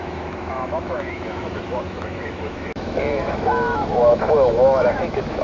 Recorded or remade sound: remade